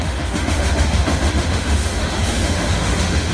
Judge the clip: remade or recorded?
remade